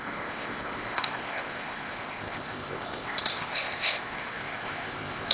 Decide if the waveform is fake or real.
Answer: fake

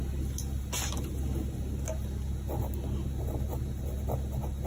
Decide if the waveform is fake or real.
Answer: real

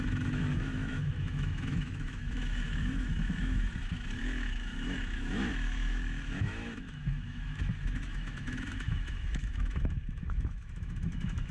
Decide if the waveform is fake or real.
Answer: fake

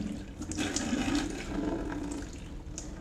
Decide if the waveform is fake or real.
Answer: real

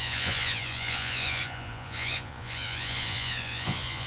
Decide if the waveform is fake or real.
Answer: fake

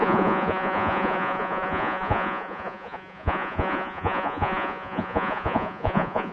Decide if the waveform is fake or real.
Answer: fake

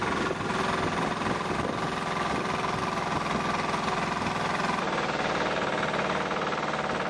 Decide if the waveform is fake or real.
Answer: real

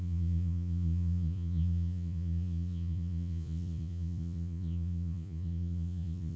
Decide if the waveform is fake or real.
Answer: fake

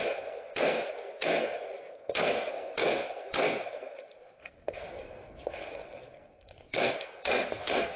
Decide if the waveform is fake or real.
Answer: fake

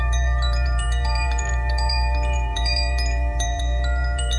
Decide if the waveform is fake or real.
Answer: fake